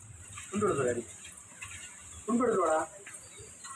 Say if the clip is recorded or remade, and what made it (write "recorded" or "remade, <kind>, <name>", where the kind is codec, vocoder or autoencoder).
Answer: remade, vocoder, BigVGAN v2